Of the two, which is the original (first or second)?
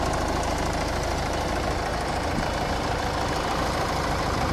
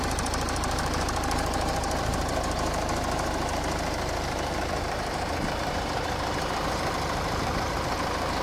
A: first